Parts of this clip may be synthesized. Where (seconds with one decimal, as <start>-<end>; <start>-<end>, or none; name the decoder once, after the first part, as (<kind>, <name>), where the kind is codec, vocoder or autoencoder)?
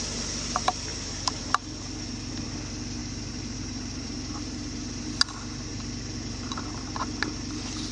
0.9-1.4 (vocoder, BigVGAN v2); 3.0-5.1; 5.7-6.6